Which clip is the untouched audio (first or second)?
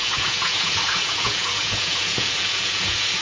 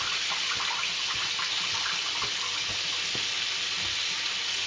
second